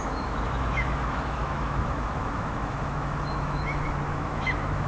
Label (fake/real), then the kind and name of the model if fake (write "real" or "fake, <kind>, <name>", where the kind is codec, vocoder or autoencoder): fake, autoencoder, DAC-VAE